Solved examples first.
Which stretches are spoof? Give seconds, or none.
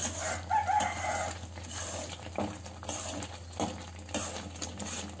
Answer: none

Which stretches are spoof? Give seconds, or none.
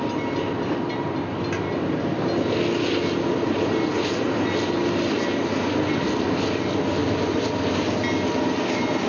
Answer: none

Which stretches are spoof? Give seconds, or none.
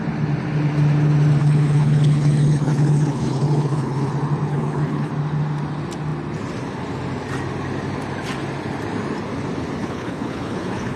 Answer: 1.4-4.1 (codec, HILCodec); 4.5-5.1; 9.8-11.0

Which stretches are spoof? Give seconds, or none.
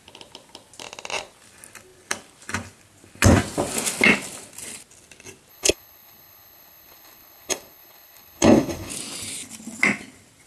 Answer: 5.5-8.9 (codec, HILCodec)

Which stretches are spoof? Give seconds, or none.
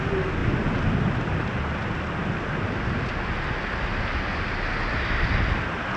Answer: none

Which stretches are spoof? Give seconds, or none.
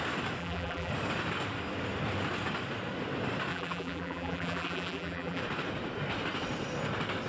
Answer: 0.4-0.9 (vocoder, BigVGAN v2); 3.5-5.4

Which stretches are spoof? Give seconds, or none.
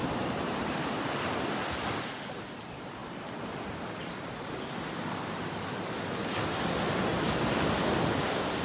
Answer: 0.0-1.0 (vocoder, BigVGAN v2)